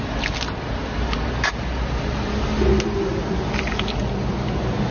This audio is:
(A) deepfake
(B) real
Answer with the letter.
B